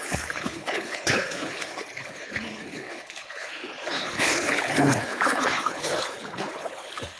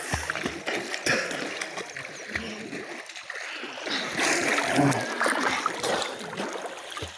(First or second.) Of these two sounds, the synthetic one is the first